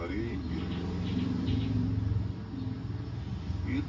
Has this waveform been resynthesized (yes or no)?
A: no